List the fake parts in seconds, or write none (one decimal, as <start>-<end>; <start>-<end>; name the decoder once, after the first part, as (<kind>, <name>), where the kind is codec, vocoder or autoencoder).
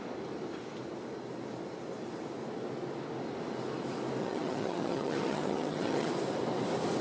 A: 4.2-6.1 (vocoder, HiFi-GAN)